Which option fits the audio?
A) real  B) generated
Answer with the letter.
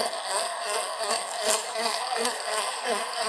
B